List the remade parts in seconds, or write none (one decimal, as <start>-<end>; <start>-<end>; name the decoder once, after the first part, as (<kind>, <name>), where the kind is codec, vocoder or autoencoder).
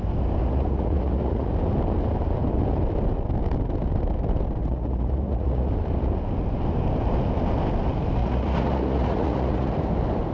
0.4-1.5 (vocoder, Vocos); 4.6-5.7; 8.2-9.7